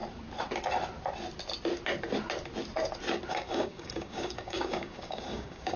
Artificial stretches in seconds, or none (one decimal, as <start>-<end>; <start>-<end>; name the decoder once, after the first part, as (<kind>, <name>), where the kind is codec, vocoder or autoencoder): 3.3-5.8 (codec, DAC)